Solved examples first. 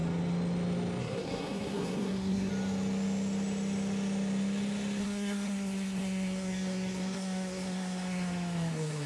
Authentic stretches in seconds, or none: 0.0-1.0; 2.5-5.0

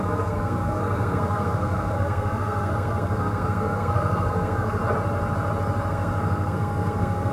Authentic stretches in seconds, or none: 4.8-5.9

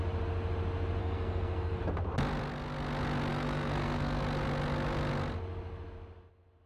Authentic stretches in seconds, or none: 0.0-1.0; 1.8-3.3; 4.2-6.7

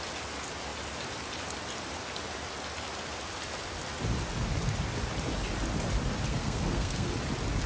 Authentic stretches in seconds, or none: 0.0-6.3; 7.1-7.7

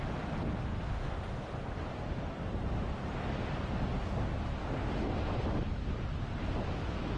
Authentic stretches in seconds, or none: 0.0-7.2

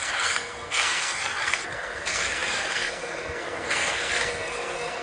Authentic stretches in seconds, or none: none